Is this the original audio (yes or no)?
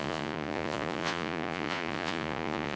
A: no